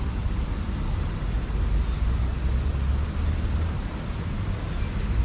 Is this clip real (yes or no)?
yes